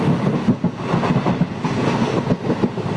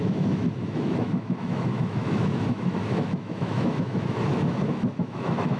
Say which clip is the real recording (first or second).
first